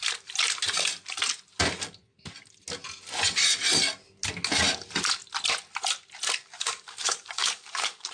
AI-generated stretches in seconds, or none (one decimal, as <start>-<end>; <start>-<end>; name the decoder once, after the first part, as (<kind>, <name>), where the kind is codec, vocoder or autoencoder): 6.4-8.1 (codec, DAC)